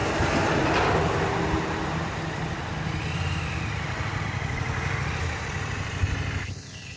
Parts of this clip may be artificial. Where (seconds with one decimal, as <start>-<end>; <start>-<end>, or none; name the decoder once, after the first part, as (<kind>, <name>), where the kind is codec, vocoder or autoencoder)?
none